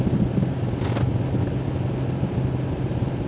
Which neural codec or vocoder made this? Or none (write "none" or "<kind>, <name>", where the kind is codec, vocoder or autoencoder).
none